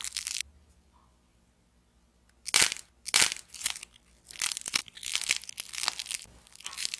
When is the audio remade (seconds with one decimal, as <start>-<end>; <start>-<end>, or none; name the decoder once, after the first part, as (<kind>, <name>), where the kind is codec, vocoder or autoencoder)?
none